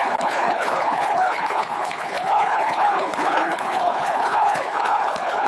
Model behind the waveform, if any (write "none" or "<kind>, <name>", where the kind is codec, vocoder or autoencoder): codec, HILCodec